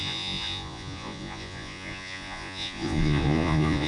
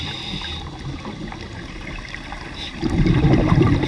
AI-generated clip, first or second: first